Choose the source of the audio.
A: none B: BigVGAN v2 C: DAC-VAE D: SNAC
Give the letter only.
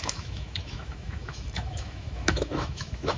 C